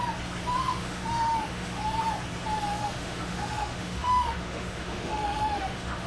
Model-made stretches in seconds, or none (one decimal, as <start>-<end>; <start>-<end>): 0.6-1.8; 2.8-6.1